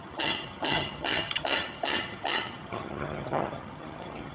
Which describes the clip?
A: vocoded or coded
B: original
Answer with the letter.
A